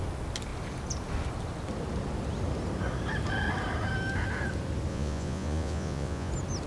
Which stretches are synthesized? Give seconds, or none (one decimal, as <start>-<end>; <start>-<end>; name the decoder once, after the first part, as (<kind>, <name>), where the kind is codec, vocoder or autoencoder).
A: 4.9-6.3 (vocoder, Vocos)